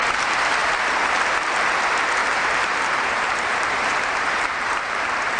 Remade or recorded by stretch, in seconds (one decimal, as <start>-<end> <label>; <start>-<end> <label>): 0.0-2.2 recorded; 2.2-4.9 remade; 4.9-5.4 recorded